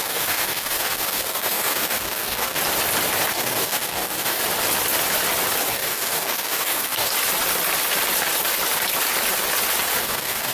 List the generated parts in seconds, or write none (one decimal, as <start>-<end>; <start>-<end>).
0.0-2.6; 3.3-4.4; 5.7-7.1; 10.0-10.5